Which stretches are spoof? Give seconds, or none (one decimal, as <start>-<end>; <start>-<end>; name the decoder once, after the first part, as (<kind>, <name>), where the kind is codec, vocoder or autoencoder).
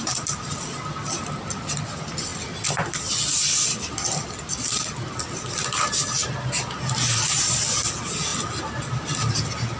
none